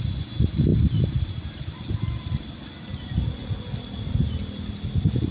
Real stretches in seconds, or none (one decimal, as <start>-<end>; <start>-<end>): 0.0-5.3